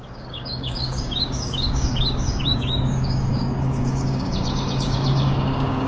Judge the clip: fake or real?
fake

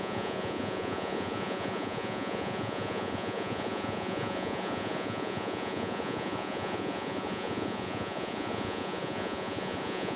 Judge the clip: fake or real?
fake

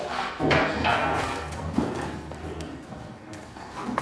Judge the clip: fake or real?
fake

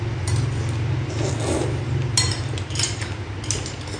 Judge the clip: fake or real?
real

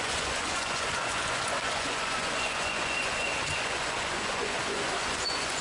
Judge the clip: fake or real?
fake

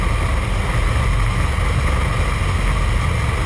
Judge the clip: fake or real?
real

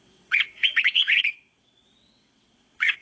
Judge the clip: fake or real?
fake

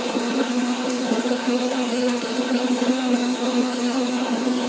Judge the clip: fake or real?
fake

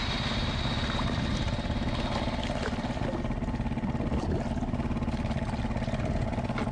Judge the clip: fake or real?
real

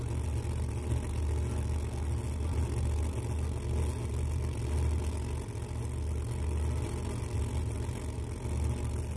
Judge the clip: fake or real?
real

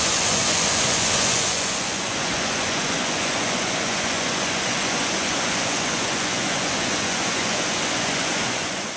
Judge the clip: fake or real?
fake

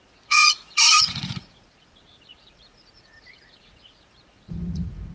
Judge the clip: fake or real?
fake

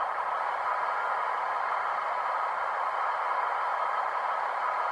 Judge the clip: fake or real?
real